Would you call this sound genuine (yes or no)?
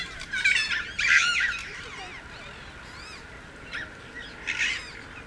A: yes